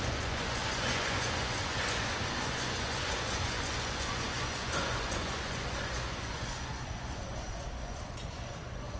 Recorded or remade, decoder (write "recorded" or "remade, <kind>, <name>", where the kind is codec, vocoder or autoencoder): remade, vocoder, Vocos